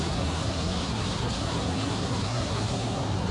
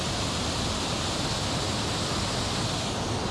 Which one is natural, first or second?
second